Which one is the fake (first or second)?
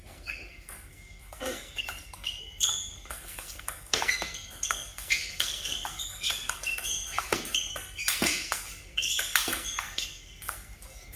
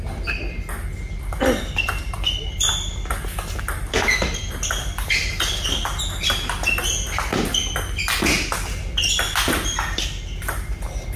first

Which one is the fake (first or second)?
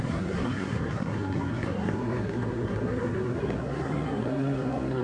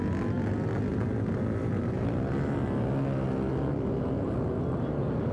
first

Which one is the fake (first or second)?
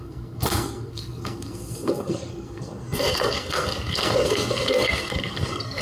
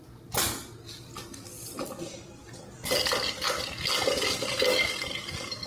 first